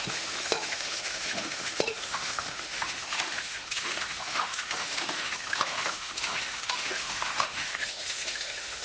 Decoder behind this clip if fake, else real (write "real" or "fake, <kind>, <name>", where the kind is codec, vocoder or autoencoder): fake, autoencoder, DAC-VAE